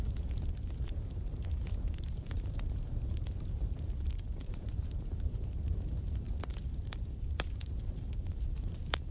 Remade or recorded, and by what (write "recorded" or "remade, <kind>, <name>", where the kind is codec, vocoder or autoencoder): remade, vocoder, BigVGAN v2